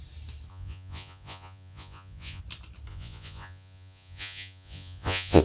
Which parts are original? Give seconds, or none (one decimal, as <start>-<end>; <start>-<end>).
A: 0.0-0.5; 2.4-2.9